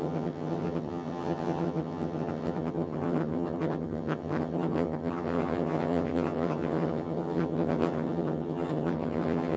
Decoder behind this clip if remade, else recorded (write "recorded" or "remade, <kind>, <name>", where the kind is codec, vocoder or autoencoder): remade, vocoder, HiFi-GAN